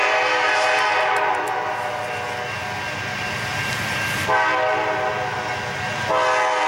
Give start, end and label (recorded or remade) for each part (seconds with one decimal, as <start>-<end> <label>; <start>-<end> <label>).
0.0-1.4 remade; 1.4-6.7 recorded